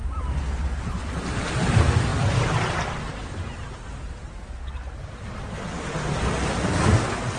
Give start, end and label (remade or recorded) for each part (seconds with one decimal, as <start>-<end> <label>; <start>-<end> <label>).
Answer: 0.0-1.1 remade; 1.1-7.4 recorded